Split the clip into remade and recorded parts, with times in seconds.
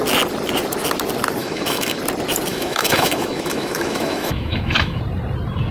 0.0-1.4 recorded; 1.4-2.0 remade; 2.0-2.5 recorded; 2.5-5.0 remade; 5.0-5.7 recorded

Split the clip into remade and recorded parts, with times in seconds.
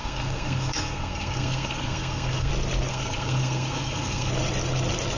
0.0-2.5 remade; 2.5-2.9 recorded; 2.9-4.3 remade; 4.3-5.2 recorded